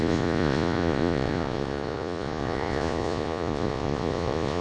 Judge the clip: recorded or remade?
remade